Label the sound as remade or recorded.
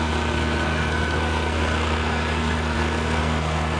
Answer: remade